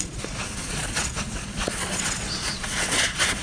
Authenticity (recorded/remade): remade